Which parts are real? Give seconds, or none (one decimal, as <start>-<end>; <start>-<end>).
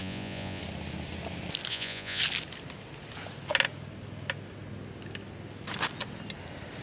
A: 0.6-1.7; 2.2-6.8